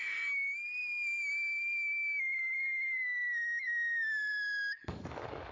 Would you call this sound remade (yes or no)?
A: yes